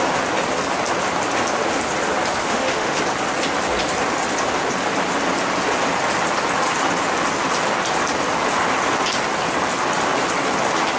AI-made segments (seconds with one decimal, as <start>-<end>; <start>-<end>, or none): 2.4-3.0